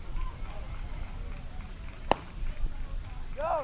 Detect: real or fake real